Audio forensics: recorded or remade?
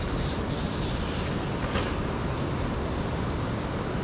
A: recorded